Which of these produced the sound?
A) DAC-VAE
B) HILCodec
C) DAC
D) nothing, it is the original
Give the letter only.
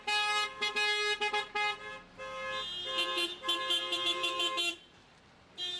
D